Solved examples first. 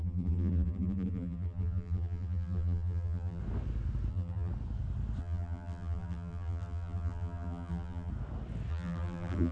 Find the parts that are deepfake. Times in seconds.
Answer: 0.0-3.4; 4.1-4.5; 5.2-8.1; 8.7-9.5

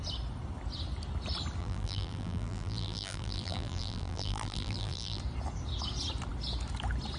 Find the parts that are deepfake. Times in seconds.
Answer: 1.6-5.2

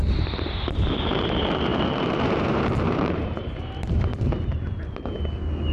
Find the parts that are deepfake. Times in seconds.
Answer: 0.0-4.1